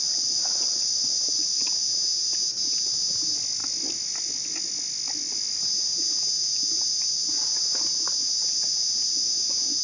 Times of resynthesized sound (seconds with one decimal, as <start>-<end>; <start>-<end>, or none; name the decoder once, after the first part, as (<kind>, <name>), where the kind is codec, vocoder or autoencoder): 0.0-1.7 (vocoder, Vocos)